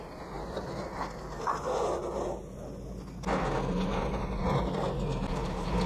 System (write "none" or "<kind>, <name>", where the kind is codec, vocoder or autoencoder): none